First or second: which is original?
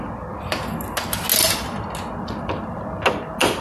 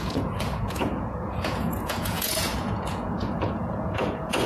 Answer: first